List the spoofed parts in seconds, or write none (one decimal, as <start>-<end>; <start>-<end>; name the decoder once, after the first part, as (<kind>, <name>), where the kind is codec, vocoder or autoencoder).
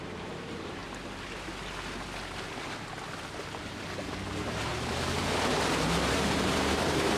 0.0-0.8 (vocoder, BigVGAN v2); 4.0-4.7; 6.1-7.2